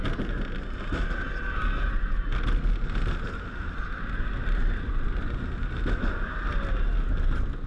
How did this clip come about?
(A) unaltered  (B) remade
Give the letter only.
A